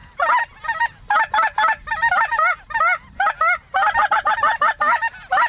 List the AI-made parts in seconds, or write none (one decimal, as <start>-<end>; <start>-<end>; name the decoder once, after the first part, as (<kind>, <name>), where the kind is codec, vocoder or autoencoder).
none